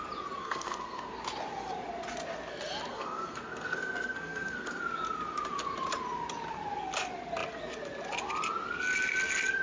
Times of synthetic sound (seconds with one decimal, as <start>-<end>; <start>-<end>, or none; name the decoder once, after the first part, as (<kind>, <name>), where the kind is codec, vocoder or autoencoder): 0.4-1.1 (codec, SNAC); 2.9-4.8